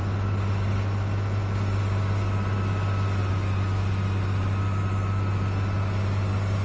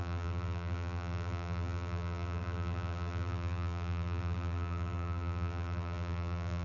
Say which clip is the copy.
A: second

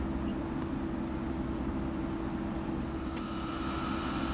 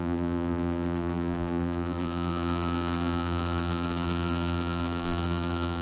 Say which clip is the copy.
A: second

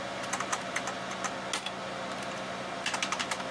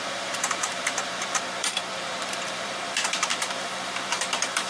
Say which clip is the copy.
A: second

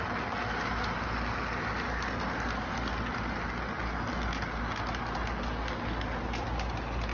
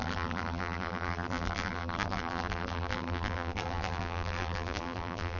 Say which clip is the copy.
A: second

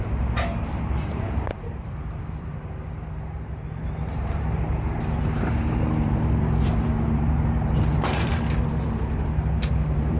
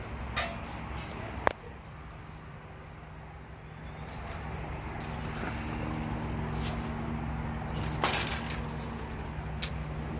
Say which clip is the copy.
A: first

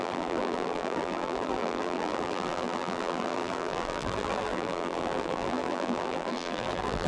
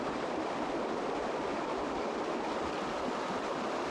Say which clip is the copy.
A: first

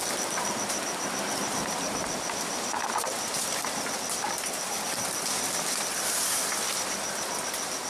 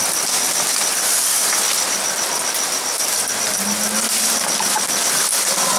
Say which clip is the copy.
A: first